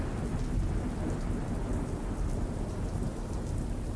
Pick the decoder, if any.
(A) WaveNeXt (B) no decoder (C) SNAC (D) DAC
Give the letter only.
B